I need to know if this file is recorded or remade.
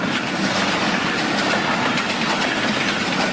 recorded